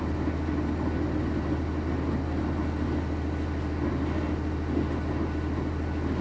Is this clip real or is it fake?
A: real